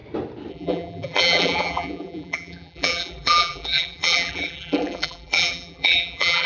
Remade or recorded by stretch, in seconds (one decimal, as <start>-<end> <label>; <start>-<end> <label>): 0.0-0.5 recorded; 0.5-6.5 remade